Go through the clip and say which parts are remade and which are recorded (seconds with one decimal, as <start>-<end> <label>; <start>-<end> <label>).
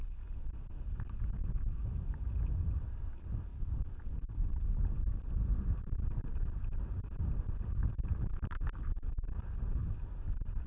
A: 0.0-3.5 recorded; 3.5-5.2 remade; 5.2-10.7 recorded